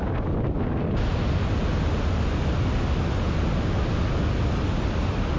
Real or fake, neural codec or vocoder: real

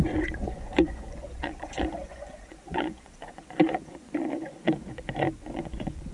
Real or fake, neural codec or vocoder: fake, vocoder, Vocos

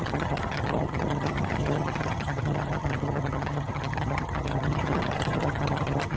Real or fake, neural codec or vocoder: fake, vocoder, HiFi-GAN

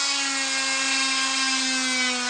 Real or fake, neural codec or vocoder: real